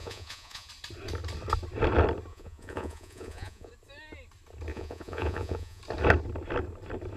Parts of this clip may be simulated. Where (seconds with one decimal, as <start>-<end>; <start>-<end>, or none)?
0.0-0.7; 2.3-3.7; 4.7-5.8